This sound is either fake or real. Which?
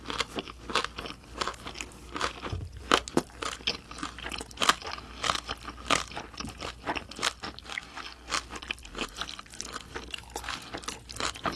real